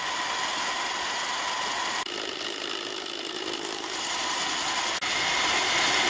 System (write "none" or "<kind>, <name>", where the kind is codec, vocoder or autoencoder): none